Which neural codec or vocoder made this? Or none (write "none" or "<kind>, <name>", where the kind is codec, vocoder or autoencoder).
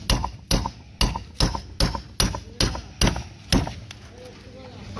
none